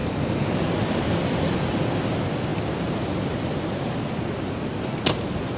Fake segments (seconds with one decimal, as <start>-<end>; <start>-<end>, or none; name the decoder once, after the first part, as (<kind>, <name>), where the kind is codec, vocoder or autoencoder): 0.0-0.6 (codec, DAC)

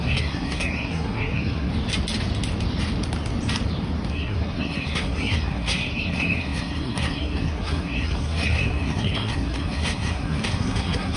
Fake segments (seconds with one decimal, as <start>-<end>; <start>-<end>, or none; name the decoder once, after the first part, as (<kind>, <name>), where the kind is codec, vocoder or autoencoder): 0.0-1.7 (codec, SNAC); 4.1-11.2

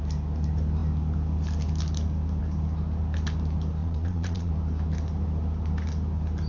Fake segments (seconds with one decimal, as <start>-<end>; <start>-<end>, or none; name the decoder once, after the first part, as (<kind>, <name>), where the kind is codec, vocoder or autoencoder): 3.8-4.5 (vocoder, Vocos)

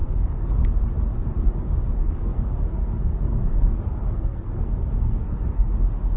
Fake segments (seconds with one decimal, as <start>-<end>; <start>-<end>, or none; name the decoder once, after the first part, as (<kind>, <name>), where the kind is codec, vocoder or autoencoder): 0.0-0.6 (codec, SNAC); 2.0-5.7

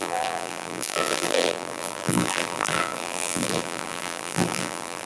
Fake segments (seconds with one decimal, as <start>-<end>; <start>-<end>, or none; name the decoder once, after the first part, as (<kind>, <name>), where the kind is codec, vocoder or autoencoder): 0.0-5.1 (vocoder, BigVGAN v2)

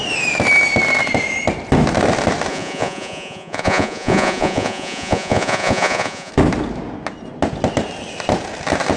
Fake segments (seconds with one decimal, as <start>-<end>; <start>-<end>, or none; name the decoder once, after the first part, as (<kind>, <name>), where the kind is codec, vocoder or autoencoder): 2.5-6.3 (vocoder, Vocos)

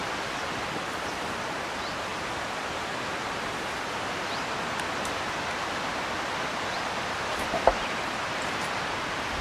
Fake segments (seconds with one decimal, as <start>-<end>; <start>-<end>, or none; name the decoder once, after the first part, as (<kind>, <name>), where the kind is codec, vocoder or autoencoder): 0.0-2.1 (vocoder, BigVGAN v2); 6.4-9.4

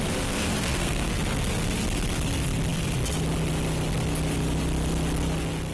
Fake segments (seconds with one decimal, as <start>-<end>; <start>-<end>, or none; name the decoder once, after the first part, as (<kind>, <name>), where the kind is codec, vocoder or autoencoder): 0.6-1.1 (codec, SNAC)